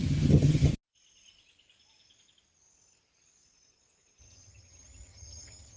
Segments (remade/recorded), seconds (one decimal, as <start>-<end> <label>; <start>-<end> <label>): 0.0-0.7 remade; 0.7-4.2 recorded; 4.2-5.8 remade